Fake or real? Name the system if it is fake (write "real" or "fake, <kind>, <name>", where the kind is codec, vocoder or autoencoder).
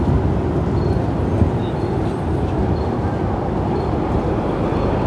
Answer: real